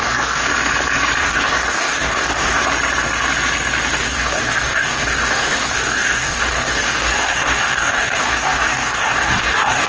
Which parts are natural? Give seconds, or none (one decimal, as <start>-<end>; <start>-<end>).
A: 0.5-1.2; 2.6-4.0